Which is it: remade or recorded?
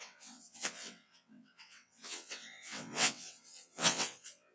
remade